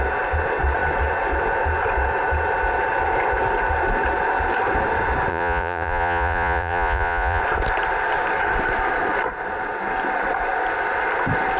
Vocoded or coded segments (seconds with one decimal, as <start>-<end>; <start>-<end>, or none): 5.3-7.4